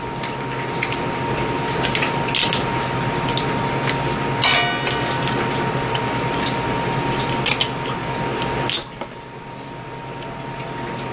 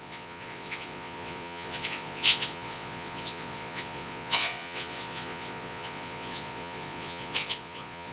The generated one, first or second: second